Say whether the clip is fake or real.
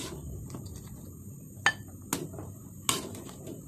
real